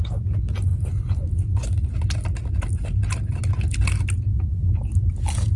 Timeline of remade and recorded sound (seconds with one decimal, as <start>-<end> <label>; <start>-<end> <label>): 0.0-5.6 recorded